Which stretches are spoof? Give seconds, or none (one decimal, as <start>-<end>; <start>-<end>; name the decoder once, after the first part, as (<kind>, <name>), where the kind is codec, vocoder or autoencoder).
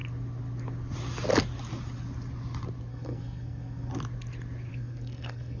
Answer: 2.9-3.9 (codec, SNAC); 4.7-5.6